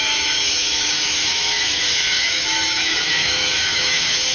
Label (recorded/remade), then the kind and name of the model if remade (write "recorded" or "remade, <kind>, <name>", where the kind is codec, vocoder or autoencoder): remade, autoencoder, DAC-VAE